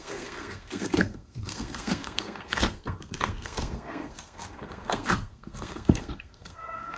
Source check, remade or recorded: remade